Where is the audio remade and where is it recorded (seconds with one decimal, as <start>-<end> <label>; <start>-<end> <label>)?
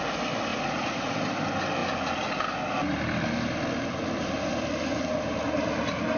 0.0-0.5 recorded; 0.5-1.1 remade; 1.1-6.2 recorded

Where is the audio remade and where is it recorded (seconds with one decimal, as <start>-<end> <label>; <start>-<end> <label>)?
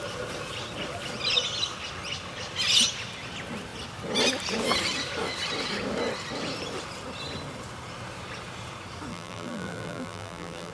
0.0-9.1 recorded; 9.1-10.7 remade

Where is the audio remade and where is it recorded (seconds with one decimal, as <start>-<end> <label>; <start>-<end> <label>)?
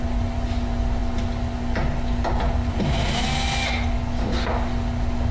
0.0-5.3 recorded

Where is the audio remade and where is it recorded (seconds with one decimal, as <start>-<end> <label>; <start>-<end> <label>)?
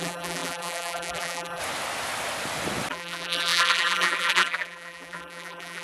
0.0-1.6 remade; 1.6-2.9 recorded; 2.9-5.8 remade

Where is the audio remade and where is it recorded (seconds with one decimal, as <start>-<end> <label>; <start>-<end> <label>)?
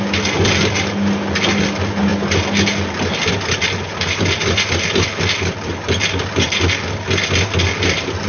0.0-8.3 recorded